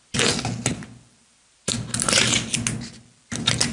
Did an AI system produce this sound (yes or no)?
no